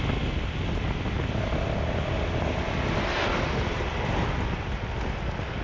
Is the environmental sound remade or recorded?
recorded